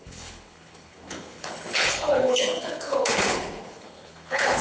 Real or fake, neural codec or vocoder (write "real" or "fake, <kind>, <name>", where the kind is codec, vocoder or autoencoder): fake, codec, HILCodec